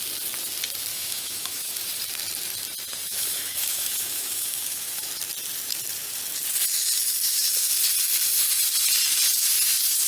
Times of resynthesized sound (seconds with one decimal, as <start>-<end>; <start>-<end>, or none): 0.9-1.8; 2.9-5.1